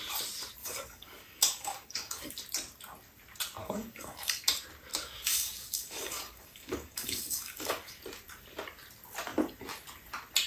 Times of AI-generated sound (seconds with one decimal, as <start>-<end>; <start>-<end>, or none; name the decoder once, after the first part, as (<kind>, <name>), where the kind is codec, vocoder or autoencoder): 0.6-2.3 (codec, DAC); 3.6-4.4; 4.9-8.0